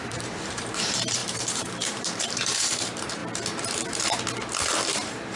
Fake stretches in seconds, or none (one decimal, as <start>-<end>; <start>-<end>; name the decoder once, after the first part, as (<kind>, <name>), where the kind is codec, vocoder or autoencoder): 0.0-3.2 (vocoder, BigVGAN v2); 4.9-5.4